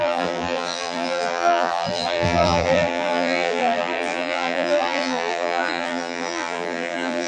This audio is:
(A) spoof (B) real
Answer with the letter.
A